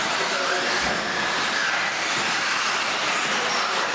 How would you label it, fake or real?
real